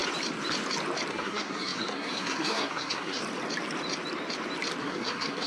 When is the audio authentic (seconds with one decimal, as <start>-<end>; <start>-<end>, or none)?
0.0-1.1; 3.2-4.8